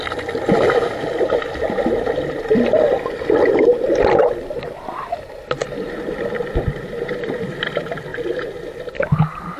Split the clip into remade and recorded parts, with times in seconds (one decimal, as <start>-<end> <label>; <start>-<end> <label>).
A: 0.0-8.1 remade; 8.1-9.6 recorded